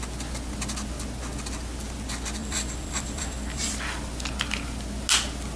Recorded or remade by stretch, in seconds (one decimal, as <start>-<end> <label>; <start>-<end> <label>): 0.0-2.4 recorded; 2.4-3.7 remade; 3.7-5.6 recorded